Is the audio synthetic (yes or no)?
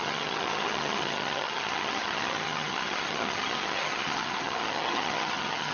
yes